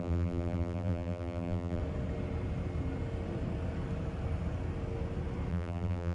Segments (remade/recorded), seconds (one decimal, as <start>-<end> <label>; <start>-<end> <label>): 0.0-1.8 remade; 1.8-5.5 recorded; 5.5-6.1 remade